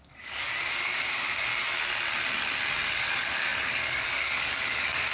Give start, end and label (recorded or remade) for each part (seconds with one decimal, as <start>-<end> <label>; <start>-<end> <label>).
0.0-1.5 remade; 1.5-2.9 recorded; 2.9-5.1 remade